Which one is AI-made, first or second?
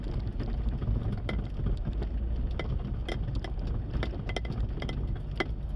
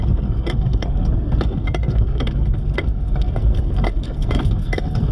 second